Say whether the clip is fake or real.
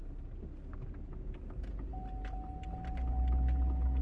real